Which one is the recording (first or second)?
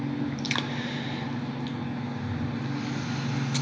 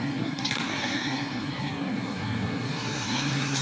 first